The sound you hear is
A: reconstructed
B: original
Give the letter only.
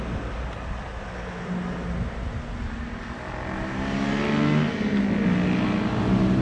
B